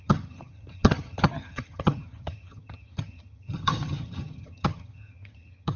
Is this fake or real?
fake